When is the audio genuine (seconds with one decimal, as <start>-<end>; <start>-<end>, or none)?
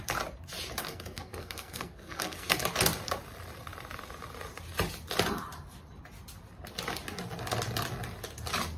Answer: 0.0-0.8; 2.6-8.8